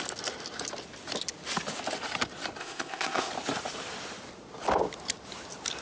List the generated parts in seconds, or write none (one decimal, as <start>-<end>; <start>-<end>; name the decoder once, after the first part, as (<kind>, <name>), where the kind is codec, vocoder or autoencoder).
2.6-3.3 (codec, ZipCodec)